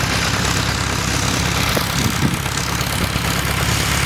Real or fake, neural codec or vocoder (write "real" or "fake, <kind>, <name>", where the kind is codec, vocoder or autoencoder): real